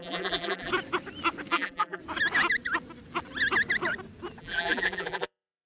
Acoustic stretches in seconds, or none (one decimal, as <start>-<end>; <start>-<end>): 0.7-1.5; 2.0-4.4

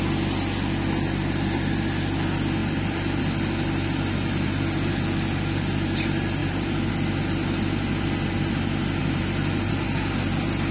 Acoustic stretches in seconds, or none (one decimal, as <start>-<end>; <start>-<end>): 0.0-2.6; 3.2-6.4; 6.9-9.0; 9.7-10.7

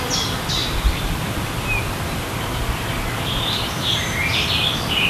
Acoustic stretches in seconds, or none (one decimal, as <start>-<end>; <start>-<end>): 0.0-5.1